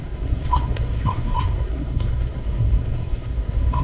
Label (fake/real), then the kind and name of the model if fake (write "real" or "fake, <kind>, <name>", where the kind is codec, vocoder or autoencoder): fake, codec, SNAC